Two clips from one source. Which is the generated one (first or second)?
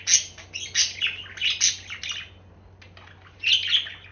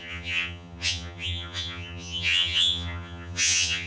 second